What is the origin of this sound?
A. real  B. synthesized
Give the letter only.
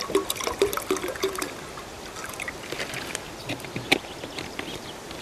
A